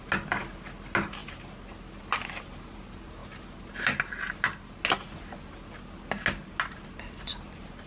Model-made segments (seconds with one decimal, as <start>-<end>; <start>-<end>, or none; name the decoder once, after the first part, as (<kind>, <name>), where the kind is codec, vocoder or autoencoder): none